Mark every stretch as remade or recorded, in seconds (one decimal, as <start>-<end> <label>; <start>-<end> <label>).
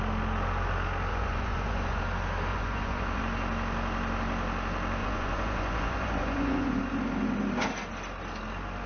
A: 0.0-1.1 recorded; 1.1-2.0 remade; 2.0-2.5 recorded; 2.5-3.2 remade; 3.2-5.0 recorded; 5.0-6.8 remade; 6.8-8.9 recorded